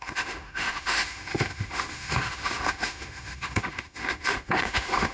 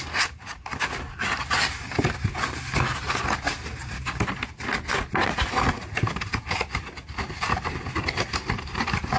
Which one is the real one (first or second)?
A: second